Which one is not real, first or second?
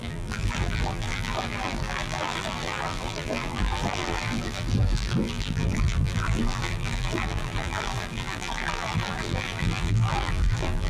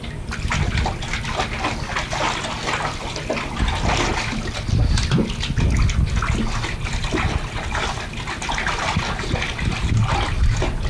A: first